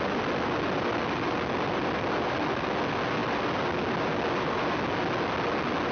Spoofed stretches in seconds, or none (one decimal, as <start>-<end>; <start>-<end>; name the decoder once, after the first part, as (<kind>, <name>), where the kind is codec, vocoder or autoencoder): none